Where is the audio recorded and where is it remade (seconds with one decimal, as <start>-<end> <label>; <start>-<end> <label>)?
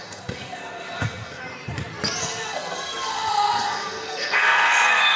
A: 0.0-1.4 remade; 1.4-2.2 recorded; 2.2-5.2 remade